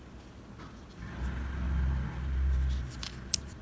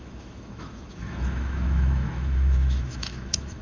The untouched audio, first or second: first